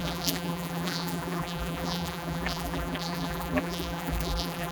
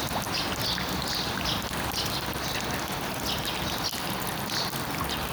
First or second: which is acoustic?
second